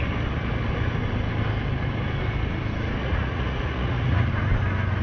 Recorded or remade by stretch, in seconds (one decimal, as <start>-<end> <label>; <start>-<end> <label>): 0.0-3.0 recorded; 3.0-4.3 remade; 4.3-5.0 recorded